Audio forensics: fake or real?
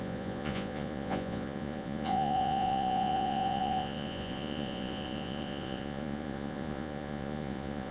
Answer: fake